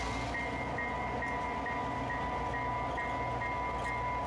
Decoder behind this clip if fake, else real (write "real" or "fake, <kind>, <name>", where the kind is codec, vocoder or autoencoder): real